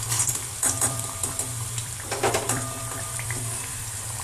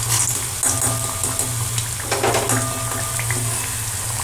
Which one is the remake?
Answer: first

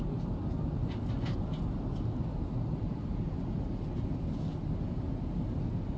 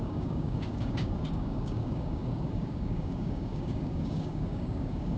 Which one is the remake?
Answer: second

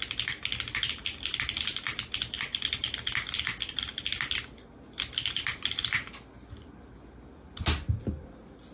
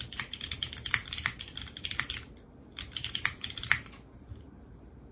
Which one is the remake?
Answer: second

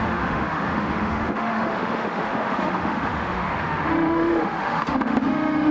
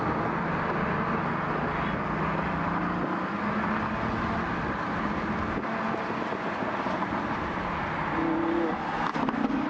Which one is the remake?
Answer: first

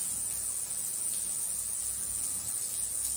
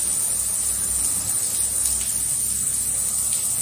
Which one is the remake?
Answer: first